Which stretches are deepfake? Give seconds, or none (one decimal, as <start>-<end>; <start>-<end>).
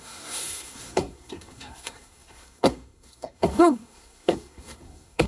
0.0-5.3